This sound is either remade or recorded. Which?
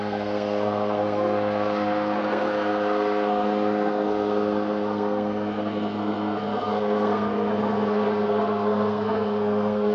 remade